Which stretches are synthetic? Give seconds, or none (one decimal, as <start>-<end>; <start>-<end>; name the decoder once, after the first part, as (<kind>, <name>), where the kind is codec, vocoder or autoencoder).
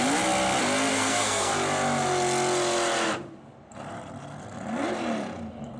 0.9-1.5 (codec, SNAC)